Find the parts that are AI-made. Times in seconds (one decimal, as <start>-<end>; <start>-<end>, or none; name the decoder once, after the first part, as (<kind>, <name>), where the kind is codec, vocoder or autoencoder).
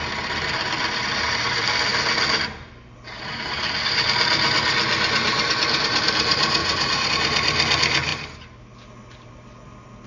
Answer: 6.6-7.1 (vocoder, Vocos)